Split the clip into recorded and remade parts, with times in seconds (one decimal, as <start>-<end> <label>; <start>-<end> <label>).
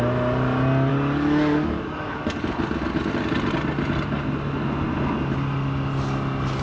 0.0-0.9 recorded; 0.9-2.2 remade; 2.2-6.6 recorded